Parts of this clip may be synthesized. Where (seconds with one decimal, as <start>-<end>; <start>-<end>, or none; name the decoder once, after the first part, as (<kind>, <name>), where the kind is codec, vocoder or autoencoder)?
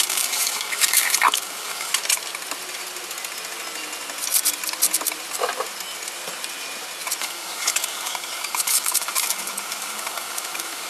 0.0-1.9 (codec, DAC); 7.2-10.9